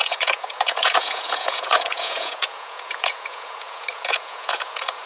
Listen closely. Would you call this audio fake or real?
fake